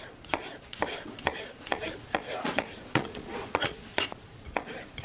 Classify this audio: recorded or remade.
remade